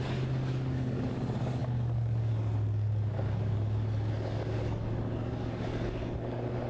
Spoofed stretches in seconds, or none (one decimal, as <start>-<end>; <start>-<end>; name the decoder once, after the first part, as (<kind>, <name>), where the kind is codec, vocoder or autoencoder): 0.0-6.7 (codec, DAC)